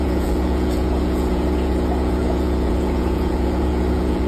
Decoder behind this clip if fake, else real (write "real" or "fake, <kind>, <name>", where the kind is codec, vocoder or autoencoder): fake, vocoder, Vocos